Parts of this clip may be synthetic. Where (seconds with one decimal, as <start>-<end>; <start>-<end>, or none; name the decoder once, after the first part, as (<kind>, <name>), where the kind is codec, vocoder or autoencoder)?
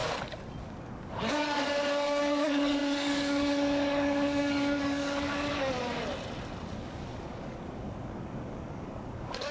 0.6-6.0 (codec, DAC); 6.7-9.5